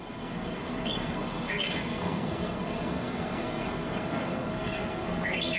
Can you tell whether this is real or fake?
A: fake